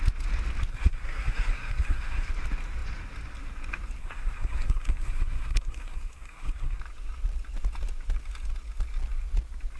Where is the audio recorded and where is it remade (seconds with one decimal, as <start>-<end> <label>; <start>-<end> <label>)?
0.0-0.7 recorded; 0.7-2.3 remade; 2.3-4.0 recorded; 4.0-6.8 remade; 6.8-9.8 recorded